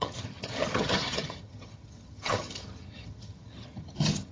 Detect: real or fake fake